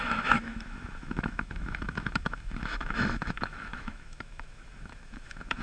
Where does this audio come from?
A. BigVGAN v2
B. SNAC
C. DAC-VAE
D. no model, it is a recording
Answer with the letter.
C